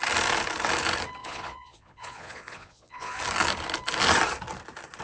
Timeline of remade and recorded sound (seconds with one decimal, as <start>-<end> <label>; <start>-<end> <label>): 0.0-1.2 recorded; 1.2-3.2 remade; 3.2-5.0 recorded